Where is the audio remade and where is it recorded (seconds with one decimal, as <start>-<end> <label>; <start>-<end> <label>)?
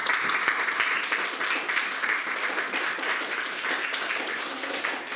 0.0-4.3 recorded; 4.3-4.8 remade; 4.8-5.2 recorded